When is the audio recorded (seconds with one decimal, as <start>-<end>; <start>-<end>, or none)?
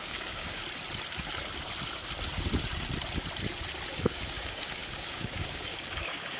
0.6-3.9